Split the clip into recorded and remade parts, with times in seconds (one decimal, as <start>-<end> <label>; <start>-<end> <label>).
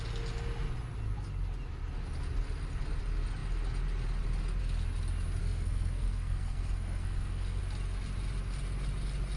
0.0-5.4 recorded; 5.4-7.6 remade; 7.6-9.4 recorded